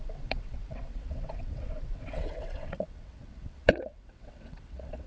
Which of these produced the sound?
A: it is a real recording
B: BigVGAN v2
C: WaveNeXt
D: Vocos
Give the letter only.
C